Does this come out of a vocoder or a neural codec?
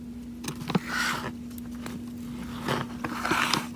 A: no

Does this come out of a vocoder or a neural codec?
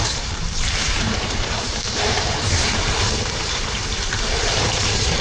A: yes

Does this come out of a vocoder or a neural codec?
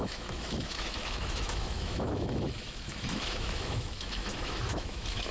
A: yes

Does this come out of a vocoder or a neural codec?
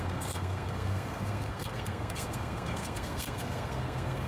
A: yes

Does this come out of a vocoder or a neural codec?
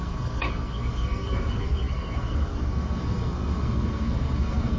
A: yes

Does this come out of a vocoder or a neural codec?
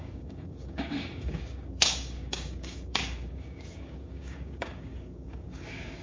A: yes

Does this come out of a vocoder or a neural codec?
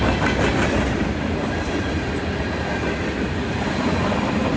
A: no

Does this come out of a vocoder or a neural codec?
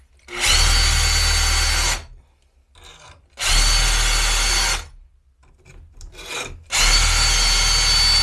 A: no